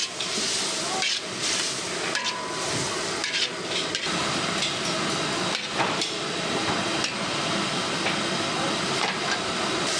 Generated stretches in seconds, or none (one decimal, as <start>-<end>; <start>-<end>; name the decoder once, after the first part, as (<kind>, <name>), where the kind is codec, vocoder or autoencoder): 0.0-0.6 (vocoder, BigVGAN v2)